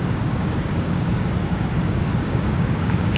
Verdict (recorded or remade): remade